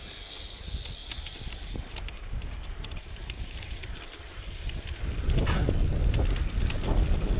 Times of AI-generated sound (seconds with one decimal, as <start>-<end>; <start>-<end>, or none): 1.0-4.7